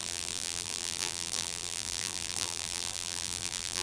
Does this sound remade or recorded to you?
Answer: remade